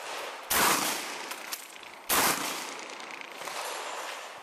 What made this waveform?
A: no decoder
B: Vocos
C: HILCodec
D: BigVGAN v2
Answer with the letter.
D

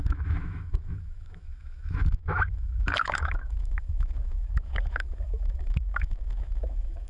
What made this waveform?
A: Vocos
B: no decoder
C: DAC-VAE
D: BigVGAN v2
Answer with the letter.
C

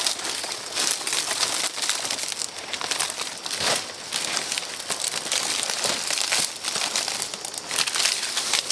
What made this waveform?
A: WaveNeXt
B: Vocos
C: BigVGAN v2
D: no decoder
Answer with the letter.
D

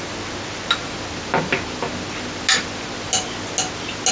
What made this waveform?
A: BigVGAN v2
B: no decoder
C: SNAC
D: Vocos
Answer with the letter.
B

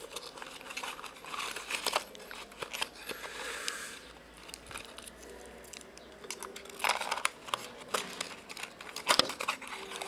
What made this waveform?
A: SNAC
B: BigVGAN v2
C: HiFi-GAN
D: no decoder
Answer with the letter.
D